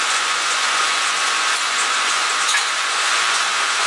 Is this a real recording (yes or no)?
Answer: no